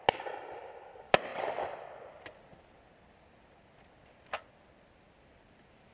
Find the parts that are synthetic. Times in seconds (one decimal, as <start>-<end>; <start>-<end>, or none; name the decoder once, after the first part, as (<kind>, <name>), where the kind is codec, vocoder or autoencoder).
1.3-1.8 (vocoder, BigVGAN v2)